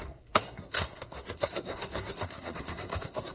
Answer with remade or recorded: remade